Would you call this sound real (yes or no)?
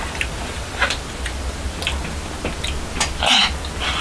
yes